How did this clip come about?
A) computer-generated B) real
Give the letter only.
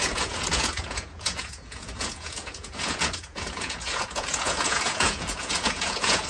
A